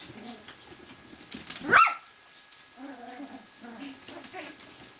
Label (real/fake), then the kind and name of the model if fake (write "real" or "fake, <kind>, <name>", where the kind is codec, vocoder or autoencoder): real